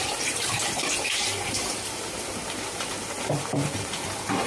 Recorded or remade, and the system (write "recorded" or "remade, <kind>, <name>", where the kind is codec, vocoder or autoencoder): remade, vocoder, BigVGAN v2